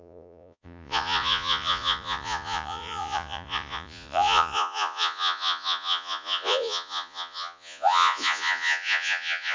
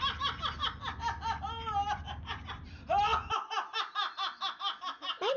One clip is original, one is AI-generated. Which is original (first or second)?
second